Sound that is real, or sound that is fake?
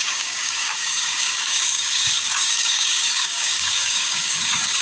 fake